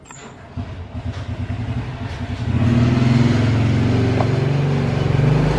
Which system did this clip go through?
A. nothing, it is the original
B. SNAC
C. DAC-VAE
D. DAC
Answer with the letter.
A